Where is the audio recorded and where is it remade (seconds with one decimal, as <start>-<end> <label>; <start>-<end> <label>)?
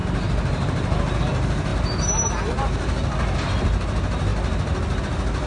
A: 0.0-1.2 remade; 1.2-5.5 recorded